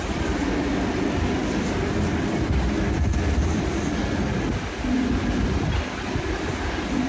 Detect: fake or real fake